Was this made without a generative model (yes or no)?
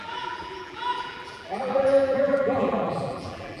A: no